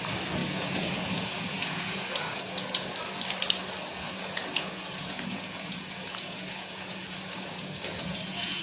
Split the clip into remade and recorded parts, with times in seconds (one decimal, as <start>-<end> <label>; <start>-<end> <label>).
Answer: 0.0-0.4 recorded; 0.4-2.9 remade; 2.9-3.9 recorded; 3.9-8.6 remade